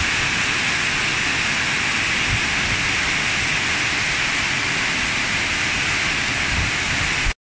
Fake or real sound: real